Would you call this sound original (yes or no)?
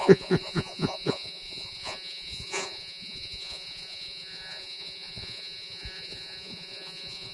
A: no